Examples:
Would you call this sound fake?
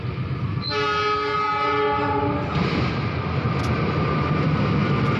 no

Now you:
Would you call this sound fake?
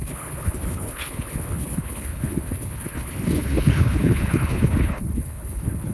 yes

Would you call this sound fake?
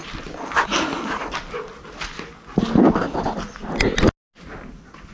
no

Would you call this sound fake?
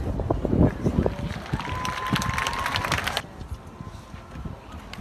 no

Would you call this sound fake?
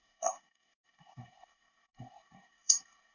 yes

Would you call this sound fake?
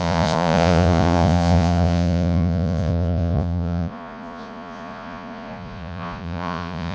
yes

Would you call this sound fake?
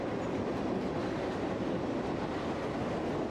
no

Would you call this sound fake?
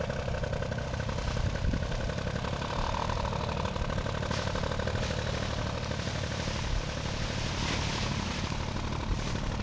no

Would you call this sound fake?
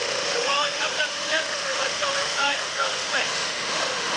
yes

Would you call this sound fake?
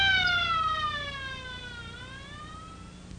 no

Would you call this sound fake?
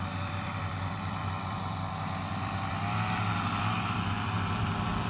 yes